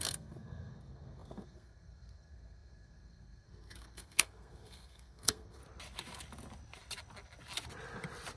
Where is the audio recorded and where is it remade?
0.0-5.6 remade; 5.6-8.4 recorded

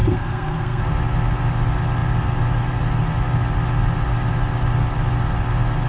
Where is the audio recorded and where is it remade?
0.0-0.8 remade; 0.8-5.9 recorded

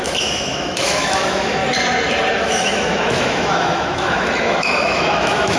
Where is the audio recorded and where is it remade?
0.0-1.6 remade; 1.6-2.3 recorded; 2.3-5.6 remade